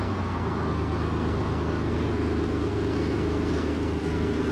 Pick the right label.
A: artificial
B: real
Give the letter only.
A